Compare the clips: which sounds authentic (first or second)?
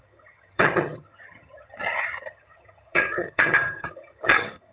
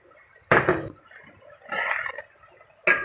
second